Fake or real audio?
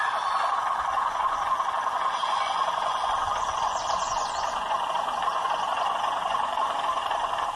fake